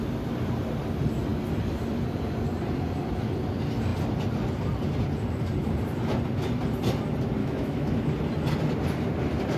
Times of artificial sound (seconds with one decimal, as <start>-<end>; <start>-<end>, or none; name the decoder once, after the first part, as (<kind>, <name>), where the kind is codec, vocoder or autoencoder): 7.4-7.9 (autoencoder, DAC-VAE)